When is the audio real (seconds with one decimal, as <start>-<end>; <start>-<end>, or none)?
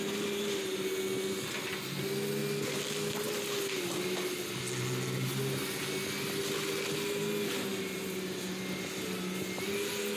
0.0-10.2